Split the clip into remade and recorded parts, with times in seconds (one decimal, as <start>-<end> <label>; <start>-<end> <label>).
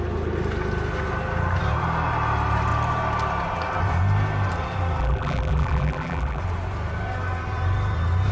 0.0-5.0 recorded; 5.0-6.4 remade; 6.4-8.3 recorded